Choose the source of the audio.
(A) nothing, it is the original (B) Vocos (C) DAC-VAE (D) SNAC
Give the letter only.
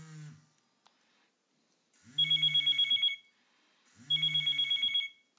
A